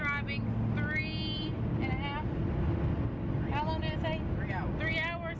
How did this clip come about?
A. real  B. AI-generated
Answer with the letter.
A